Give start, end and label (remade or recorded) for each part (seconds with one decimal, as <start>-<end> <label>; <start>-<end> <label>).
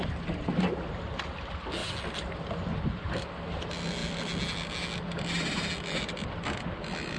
0.0-7.2 recorded